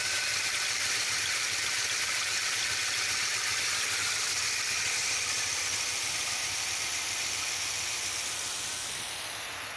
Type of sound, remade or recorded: recorded